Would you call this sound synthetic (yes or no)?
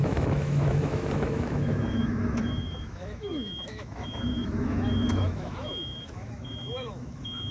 yes